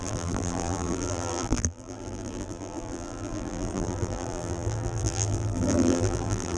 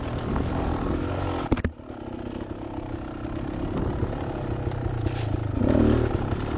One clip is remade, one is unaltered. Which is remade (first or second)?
first